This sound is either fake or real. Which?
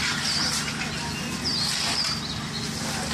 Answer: real